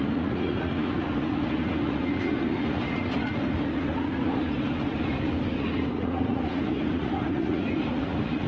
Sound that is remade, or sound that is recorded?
remade